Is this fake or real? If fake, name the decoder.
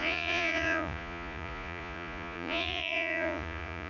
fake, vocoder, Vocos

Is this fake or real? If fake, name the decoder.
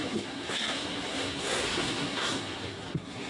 fake, codec, SNAC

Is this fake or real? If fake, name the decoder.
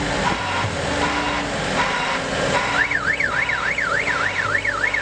real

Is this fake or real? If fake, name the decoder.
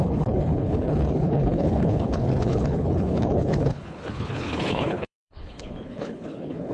fake, codec, HILCodec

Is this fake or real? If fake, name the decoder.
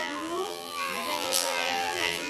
fake, vocoder, BigVGAN v2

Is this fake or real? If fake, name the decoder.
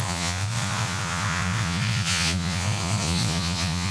fake, vocoder, Vocos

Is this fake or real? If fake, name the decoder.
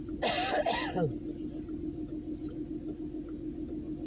real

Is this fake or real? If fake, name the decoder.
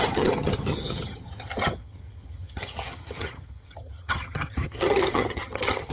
fake, vocoder, HiFi-GAN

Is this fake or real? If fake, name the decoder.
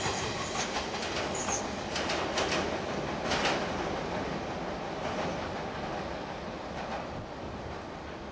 real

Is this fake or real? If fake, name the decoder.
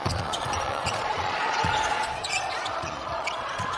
fake, vocoder, Vocos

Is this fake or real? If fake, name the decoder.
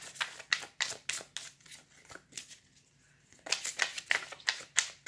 real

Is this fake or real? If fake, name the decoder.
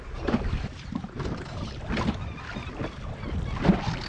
real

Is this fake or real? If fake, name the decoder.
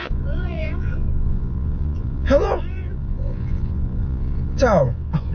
fake, vocoder, Vocos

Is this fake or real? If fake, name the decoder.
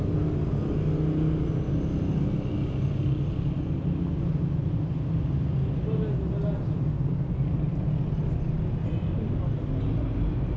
real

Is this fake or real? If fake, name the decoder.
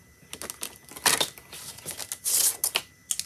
real